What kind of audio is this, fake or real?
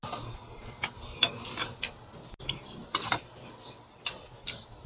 real